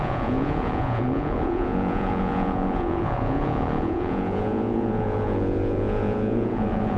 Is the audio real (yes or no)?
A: no